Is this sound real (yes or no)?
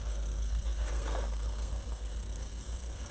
no